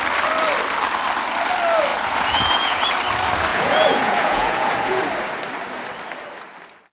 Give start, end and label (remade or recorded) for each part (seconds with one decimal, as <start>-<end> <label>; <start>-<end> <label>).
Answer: 0.0-1.9 recorded; 1.9-2.9 remade; 2.9-3.5 recorded; 3.5-5.0 remade; 5.0-6.9 recorded